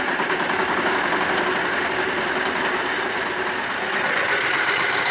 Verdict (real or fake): real